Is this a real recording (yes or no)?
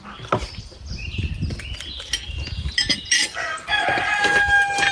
yes